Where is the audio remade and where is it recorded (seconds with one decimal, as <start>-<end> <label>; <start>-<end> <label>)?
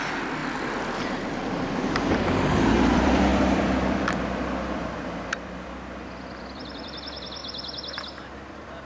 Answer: 0.0-7.4 remade; 7.4-8.3 recorded; 8.3-8.9 remade